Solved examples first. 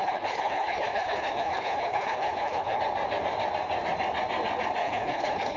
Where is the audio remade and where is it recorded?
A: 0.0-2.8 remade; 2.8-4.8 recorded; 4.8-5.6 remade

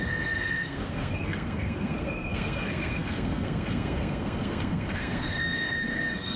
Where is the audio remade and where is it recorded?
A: 0.0-6.4 remade

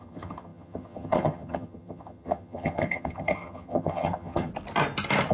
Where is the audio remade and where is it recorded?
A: 0.0-4.5 remade; 4.5-5.3 recorded

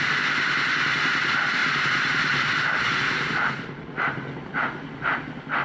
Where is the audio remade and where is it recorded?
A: 0.0-5.6 recorded

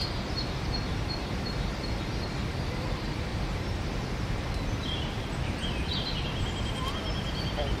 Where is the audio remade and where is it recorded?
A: 0.0-3.3 recorded; 3.3-5.9 remade; 5.9-7.8 recorded

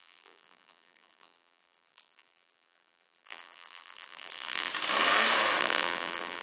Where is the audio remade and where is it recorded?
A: 0.0-4.7 remade; 4.7-5.6 recorded; 5.6-6.4 remade